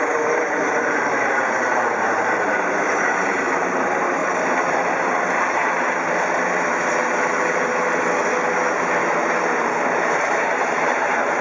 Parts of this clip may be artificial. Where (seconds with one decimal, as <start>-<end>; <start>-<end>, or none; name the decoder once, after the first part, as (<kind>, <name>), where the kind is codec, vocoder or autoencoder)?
0.0-4.2 (vocoder, BigVGAN v2); 9.1-11.4